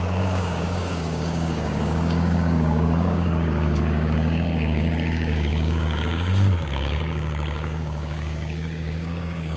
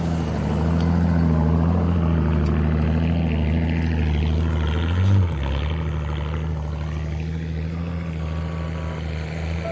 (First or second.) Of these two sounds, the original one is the second